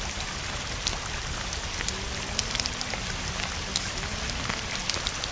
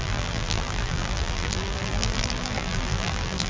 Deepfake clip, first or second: second